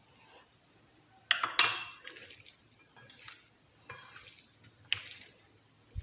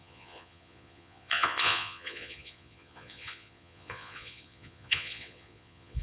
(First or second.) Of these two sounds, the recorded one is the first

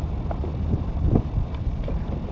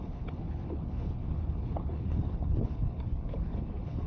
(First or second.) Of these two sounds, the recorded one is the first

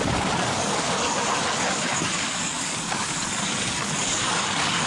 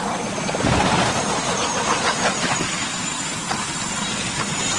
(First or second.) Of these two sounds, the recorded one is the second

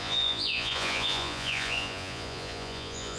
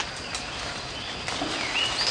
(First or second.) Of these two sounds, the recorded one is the second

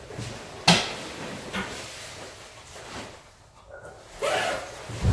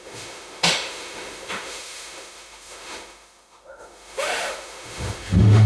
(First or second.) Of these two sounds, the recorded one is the first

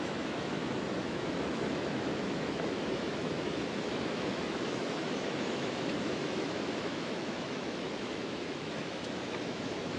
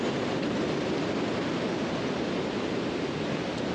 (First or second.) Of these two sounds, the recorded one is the second